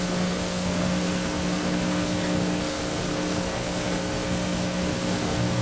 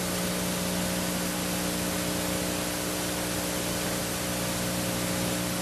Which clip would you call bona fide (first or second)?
second